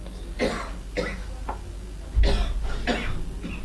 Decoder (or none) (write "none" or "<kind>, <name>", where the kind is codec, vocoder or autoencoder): none